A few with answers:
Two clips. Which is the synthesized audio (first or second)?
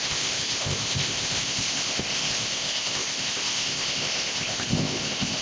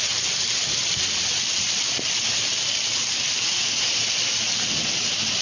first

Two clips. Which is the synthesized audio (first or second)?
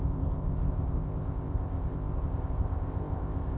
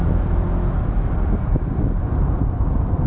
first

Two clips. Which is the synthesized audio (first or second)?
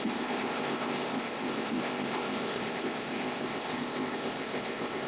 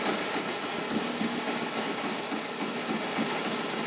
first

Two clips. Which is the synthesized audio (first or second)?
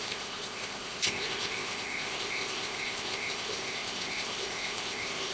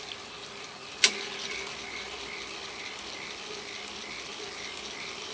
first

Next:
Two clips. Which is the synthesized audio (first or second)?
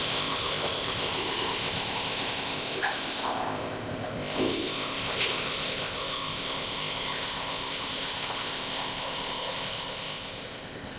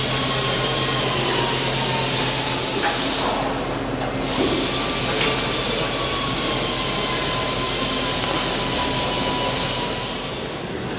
first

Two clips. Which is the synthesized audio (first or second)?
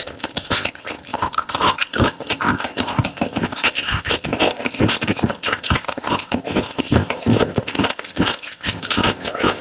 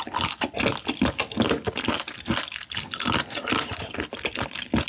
first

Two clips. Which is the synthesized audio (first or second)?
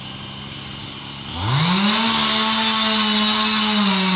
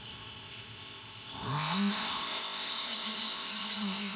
second